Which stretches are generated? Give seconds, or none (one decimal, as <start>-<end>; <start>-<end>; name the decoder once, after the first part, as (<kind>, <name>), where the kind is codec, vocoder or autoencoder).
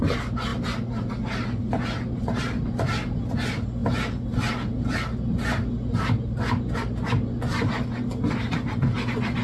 none